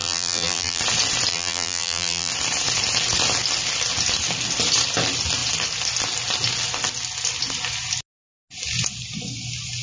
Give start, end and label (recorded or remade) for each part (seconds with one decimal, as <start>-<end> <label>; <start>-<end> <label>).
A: 0.0-0.8 remade; 0.8-1.3 recorded; 1.3-2.3 remade; 2.3-9.8 recorded